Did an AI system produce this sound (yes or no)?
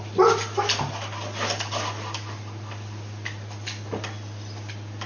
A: no